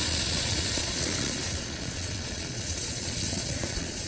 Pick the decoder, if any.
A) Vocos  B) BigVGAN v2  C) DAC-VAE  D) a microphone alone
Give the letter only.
A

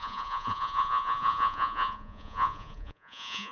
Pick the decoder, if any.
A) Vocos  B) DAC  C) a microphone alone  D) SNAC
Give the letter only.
A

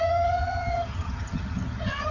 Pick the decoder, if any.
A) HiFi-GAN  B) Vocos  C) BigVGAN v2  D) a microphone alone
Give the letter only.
A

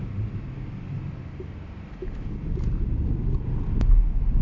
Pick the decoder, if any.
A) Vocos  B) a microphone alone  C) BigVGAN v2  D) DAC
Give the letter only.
B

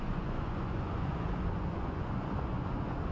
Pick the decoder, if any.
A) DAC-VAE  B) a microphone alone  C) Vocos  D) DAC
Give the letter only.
C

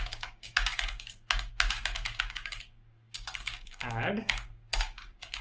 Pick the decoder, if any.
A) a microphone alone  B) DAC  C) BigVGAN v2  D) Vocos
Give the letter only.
B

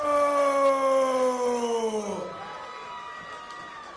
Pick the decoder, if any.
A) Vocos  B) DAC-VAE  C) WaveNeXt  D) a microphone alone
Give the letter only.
D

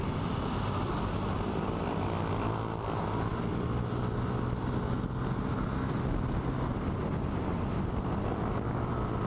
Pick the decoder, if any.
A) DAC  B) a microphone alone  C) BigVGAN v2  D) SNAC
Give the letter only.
B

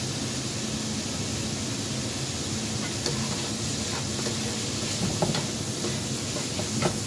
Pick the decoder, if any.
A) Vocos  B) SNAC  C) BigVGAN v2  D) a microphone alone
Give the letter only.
D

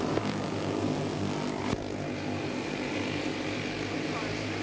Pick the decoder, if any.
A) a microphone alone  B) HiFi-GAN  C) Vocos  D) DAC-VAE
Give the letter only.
A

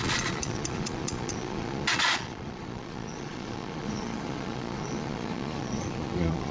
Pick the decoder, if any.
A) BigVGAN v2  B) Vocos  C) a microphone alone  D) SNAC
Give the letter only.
B